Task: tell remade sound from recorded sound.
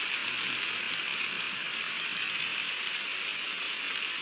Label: recorded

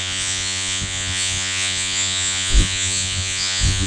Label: remade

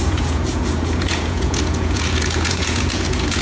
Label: remade